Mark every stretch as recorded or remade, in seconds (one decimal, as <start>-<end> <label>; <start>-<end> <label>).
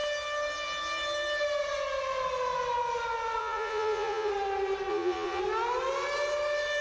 0.0-3.4 recorded; 3.4-4.3 remade; 4.3-4.9 recorded; 4.9-5.4 remade; 5.4-6.8 recorded